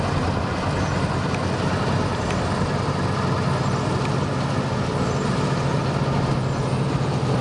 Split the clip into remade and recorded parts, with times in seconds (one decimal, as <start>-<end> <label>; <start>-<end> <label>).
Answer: 0.0-2.1 recorded; 2.1-2.7 remade; 2.7-7.4 recorded